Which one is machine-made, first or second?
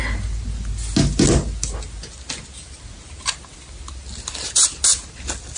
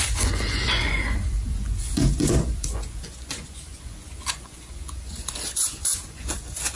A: second